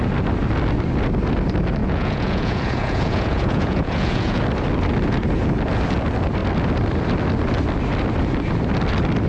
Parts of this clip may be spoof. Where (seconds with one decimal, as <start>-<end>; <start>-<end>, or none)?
1.8-4.4